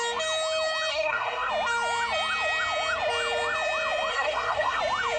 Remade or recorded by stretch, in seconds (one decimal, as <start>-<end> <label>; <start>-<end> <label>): 0.0-0.9 recorded; 0.9-1.5 remade; 1.5-4.1 recorded; 4.1-4.8 remade; 4.8-5.2 recorded